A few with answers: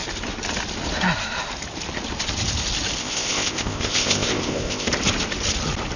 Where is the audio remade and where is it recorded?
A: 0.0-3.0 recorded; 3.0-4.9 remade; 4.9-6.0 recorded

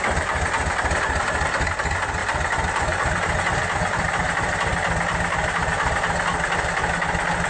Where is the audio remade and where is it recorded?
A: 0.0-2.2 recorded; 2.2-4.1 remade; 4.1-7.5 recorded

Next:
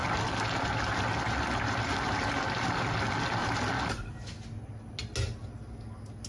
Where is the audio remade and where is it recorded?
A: 0.0-6.3 recorded

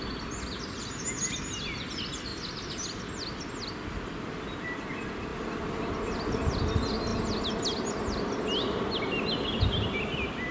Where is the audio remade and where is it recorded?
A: 0.0-10.5 recorded

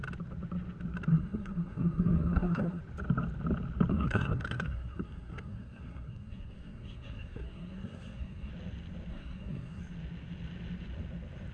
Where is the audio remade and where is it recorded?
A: 0.0-1.1 recorded; 1.1-2.8 remade; 2.8-3.9 recorded; 3.9-8.5 remade; 8.5-9.1 recorded; 9.1-9.8 remade; 9.8-11.5 recorded